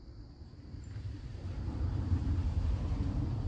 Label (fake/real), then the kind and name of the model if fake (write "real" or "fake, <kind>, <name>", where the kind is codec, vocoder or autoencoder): fake, vocoder, BigVGAN v2